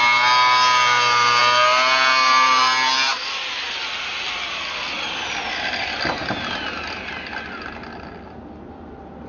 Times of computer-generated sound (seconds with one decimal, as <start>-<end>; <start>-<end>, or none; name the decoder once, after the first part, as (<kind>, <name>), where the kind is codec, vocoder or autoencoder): none